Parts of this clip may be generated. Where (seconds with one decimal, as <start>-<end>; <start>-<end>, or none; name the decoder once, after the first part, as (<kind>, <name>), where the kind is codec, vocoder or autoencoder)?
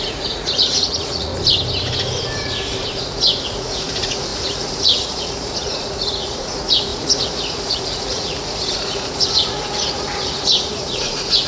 0.0-1.3 (vocoder, Vocos); 3.0-11.5